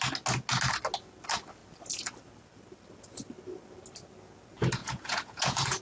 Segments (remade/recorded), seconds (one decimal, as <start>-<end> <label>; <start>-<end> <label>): 0.0-4.8 recorded; 4.8-5.8 remade